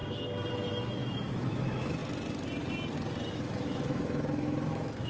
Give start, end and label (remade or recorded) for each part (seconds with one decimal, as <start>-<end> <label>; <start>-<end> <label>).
0.0-0.5 recorded; 0.5-2.0 remade; 2.0-3.3 recorded; 3.3-5.1 remade